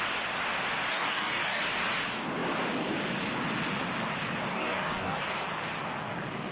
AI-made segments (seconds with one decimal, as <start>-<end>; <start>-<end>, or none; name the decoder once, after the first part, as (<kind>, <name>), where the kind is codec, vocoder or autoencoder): 0.9-1.6 (codec, DAC); 4.5-5.2